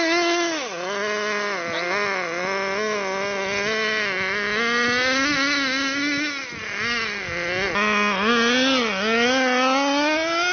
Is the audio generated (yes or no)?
no